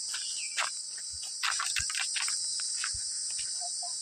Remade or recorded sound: recorded